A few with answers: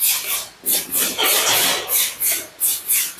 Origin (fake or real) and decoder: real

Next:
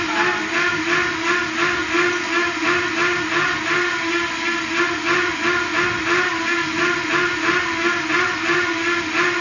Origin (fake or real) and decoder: real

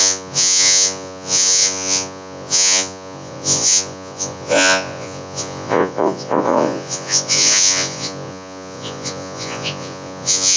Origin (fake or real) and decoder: fake, vocoder, Vocos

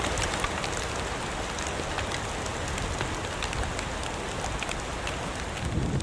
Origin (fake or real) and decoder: real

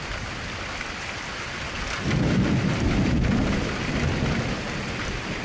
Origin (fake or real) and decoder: real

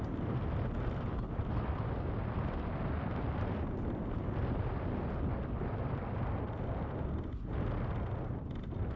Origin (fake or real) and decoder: real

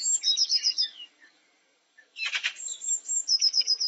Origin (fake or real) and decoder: fake, codec, DAC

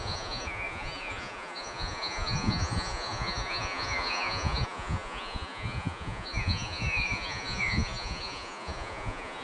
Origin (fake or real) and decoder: fake, vocoder, Vocos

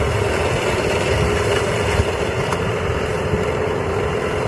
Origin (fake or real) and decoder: real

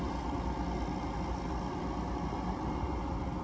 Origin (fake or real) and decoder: real